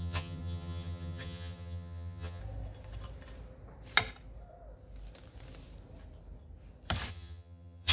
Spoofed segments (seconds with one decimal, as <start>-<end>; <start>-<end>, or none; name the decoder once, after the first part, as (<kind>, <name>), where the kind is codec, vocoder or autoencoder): 0.0-2.4 (vocoder, HiFi-GAN); 7.1-7.9